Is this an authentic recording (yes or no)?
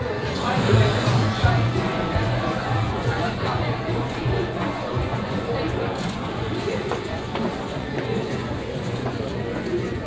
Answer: no